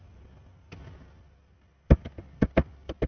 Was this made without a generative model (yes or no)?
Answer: yes